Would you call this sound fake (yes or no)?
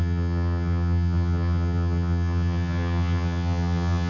yes